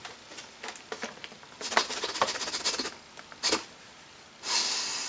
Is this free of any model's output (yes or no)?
yes